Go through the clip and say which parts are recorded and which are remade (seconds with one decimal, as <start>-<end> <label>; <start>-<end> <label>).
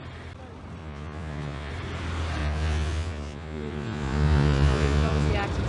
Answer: 0.0-0.8 recorded; 0.8-1.7 remade; 1.7-2.4 recorded; 2.4-5.3 remade; 5.3-5.7 recorded